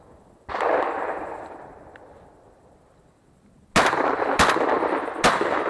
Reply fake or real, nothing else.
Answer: real